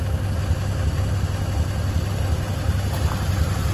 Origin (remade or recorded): recorded